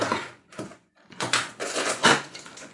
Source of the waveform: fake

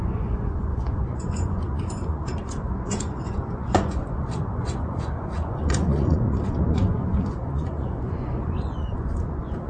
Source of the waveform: fake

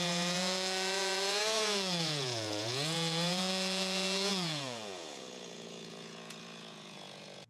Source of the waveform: fake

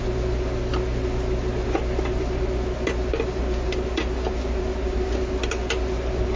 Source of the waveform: real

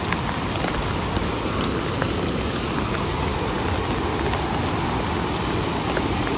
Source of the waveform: real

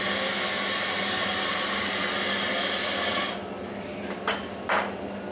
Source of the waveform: real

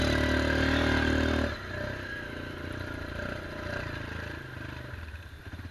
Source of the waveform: real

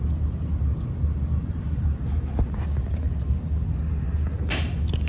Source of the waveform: real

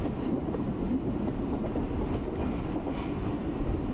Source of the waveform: real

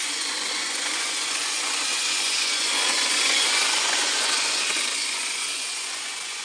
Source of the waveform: fake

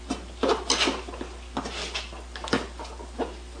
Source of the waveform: real